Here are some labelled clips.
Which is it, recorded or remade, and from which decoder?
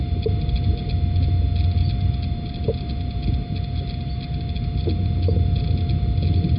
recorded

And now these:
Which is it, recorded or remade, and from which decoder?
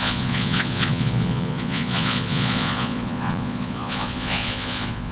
remade, vocoder, Vocos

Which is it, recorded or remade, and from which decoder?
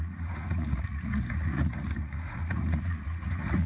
remade, vocoder, Vocos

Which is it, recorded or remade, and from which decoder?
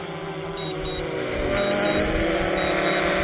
recorded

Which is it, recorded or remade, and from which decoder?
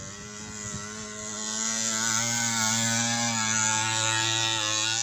recorded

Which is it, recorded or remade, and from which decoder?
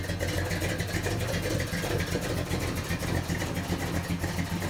recorded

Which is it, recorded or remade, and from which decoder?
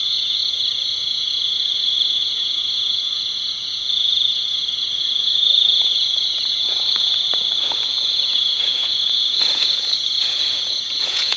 remade, vocoder, Vocos